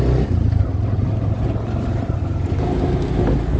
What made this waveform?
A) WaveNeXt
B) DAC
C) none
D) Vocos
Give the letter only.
C